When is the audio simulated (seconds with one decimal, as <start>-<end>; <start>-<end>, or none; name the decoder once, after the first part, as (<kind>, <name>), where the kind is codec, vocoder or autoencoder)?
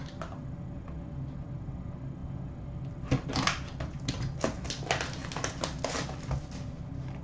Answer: none